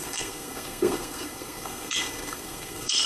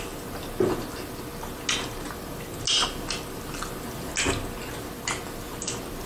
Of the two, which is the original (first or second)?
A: second